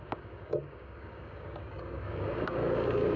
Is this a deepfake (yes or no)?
yes